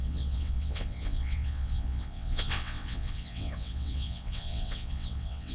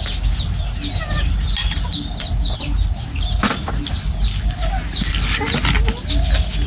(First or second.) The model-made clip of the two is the first